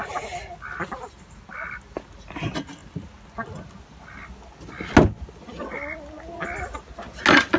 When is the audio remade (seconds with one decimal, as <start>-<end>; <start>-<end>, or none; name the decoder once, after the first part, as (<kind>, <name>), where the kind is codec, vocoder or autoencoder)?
none